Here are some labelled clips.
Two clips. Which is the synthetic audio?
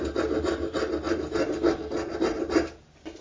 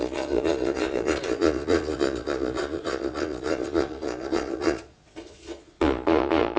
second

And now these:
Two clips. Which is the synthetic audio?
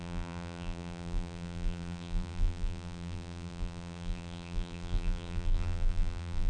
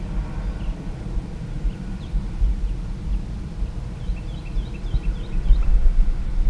first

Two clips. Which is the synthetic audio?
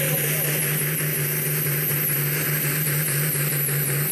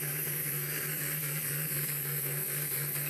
second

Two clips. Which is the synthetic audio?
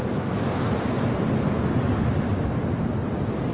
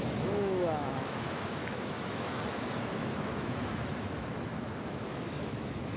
second